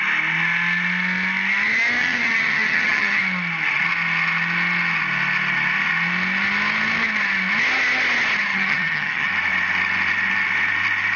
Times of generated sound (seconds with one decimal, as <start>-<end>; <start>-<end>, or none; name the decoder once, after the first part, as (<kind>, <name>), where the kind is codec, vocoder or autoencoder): 2.0-3.2 (vocoder, HiFi-GAN); 8.5-9.3